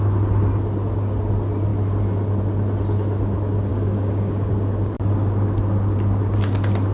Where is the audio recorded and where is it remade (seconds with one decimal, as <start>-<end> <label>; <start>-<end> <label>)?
0.0-3.7 recorded; 3.7-4.5 remade; 4.5-6.9 recorded